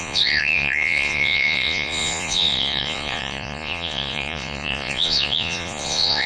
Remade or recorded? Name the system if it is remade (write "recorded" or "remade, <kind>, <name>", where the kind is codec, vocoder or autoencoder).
remade, vocoder, Vocos